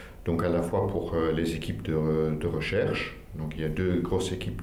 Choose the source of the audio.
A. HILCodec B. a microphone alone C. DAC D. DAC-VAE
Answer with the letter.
B